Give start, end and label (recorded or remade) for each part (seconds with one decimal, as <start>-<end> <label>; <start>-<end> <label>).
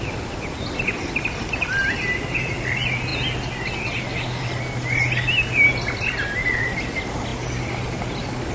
0.0-8.5 recorded